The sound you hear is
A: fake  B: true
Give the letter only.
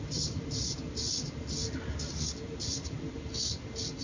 B